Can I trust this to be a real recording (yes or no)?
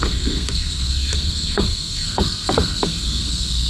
no